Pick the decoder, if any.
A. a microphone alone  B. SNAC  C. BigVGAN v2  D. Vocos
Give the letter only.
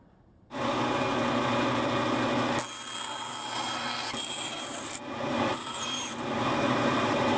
A